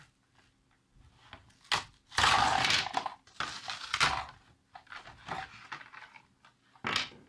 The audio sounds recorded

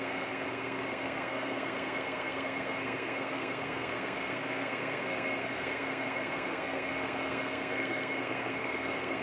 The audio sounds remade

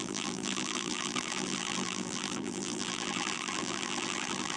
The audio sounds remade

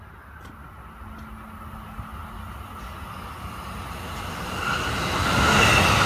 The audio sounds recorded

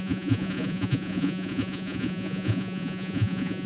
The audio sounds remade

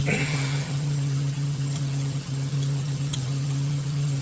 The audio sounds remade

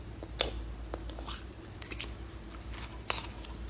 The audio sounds recorded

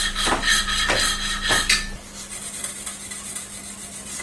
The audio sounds recorded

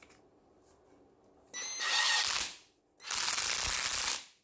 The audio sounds recorded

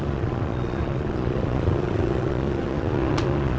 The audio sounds remade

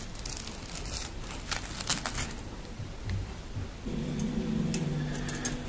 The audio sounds recorded